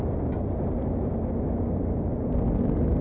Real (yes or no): yes